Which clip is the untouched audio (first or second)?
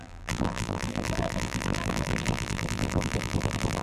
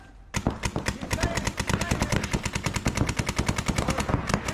second